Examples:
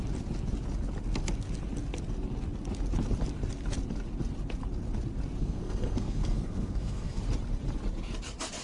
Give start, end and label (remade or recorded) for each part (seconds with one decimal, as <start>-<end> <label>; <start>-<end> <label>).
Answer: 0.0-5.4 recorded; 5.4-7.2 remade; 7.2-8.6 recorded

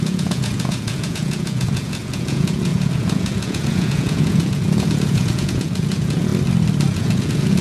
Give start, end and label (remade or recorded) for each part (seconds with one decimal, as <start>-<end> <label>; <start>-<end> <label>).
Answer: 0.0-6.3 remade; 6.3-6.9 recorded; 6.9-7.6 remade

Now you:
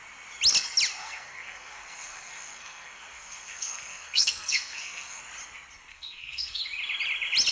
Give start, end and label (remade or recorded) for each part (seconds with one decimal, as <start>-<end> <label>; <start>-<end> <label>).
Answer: 0.0-1.0 recorded; 1.0-5.2 remade; 5.2-5.9 recorded; 5.9-6.6 remade; 6.6-7.5 recorded